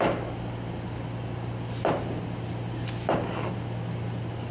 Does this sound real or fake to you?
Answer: real